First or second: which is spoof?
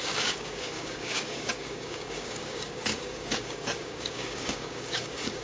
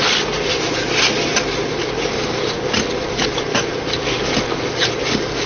first